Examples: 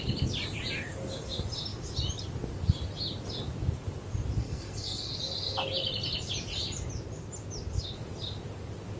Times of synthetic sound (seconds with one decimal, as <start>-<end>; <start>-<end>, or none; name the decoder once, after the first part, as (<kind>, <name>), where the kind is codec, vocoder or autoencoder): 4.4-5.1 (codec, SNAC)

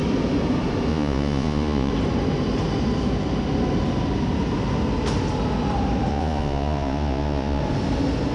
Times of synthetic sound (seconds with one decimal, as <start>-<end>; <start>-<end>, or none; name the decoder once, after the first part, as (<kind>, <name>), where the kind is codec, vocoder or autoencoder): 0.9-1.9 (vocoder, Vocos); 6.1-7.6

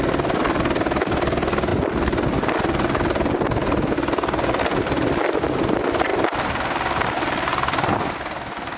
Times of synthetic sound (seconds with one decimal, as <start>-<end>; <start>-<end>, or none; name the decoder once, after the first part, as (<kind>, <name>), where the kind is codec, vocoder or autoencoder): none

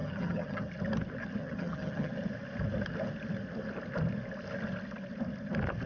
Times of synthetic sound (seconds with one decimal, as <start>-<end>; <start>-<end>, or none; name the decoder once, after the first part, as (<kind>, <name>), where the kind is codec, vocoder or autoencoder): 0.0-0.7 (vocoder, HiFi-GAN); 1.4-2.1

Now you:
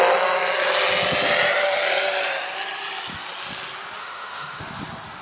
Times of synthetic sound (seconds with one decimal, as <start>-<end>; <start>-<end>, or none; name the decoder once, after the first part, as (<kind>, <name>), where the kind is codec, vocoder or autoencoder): 4.0-4.6 (autoencoder, DAC-VAE)

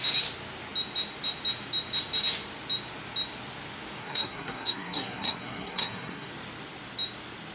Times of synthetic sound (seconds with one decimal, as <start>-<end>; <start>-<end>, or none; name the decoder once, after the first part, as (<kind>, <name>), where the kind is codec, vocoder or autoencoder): 4.0-6.3 (codec, SNAC)

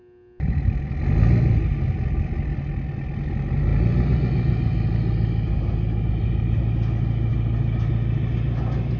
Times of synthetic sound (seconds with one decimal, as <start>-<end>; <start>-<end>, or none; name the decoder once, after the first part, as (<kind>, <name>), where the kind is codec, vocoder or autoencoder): none

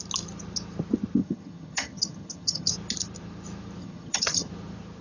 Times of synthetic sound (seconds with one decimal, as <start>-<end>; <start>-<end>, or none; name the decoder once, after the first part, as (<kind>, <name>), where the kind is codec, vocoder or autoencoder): 1.2-2.7 (vocoder, HiFi-GAN); 3.8-4.5